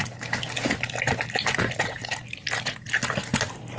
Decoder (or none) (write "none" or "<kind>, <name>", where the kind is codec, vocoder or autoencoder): none